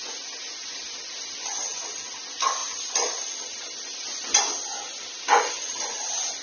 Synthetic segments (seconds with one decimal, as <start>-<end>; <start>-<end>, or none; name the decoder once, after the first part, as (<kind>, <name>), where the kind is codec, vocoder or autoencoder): none

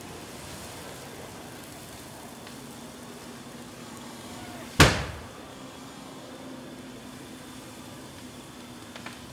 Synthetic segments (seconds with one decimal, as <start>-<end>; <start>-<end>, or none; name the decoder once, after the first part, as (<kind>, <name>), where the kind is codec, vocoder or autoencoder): 3.8-4.4 (codec, DAC); 5.5-6.3

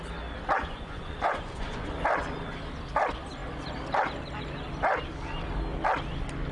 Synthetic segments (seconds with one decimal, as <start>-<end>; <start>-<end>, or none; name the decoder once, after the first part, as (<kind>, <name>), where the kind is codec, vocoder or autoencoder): 0.6-1.9 (vocoder, Vocos)

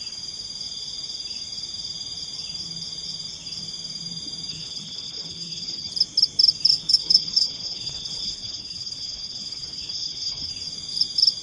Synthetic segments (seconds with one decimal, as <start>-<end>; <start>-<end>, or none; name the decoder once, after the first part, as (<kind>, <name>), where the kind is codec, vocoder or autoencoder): 4.5-5.9 (codec, HILCodec); 6.7-10.5

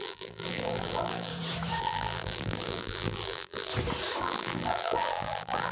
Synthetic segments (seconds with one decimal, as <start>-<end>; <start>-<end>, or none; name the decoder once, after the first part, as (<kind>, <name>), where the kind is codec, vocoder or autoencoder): 0.0-1.3 (vocoder, BigVGAN v2); 1.8-3.7; 4.2-5.7

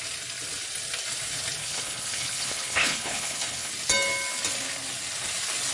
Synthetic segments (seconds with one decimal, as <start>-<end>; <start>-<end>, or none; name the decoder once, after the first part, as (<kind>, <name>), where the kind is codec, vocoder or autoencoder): 1.6-3.7 (codec, HILCodec)

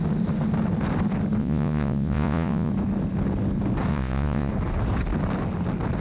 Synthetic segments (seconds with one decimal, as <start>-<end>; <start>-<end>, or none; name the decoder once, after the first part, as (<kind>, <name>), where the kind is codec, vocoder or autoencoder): 1.4-2.7 (vocoder, Vocos); 3.9-4.5